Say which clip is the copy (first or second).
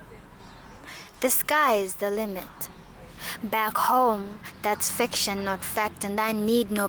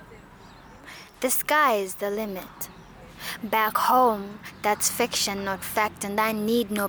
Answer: first